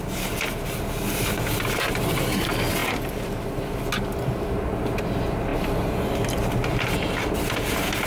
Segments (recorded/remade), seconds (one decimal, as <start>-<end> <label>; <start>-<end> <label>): 0.0-2.8 recorded; 2.8-3.8 remade; 3.8-5.5 recorded; 5.5-6.8 remade; 6.8-8.1 recorded